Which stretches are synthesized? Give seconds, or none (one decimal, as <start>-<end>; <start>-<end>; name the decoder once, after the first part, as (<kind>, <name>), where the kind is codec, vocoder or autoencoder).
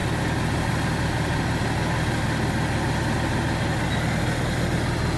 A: none